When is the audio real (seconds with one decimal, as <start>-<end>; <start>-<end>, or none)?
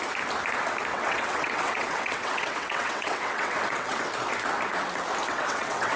0.0-0.9; 4.0-5.3